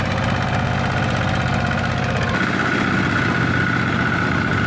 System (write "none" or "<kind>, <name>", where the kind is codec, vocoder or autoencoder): none